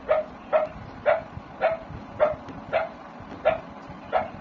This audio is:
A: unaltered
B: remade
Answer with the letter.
A